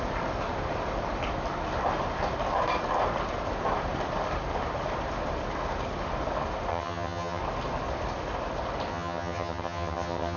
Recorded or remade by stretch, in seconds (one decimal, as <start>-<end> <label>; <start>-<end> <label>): 0.0-6.7 recorded; 6.7-7.4 remade; 7.4-8.9 recorded; 8.9-10.4 remade